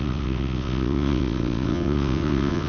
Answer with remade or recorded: remade